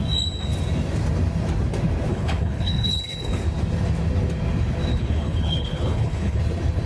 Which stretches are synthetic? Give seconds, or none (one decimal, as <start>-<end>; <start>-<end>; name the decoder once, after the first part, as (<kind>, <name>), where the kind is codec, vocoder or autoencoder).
2.1-3.4 (codec, HILCodec); 4.9-6.4